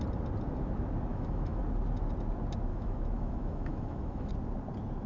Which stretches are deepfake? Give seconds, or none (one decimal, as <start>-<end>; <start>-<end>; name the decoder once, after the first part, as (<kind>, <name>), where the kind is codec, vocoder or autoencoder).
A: 1.1-1.6 (autoencoder, DAC-VAE); 2.7-4.3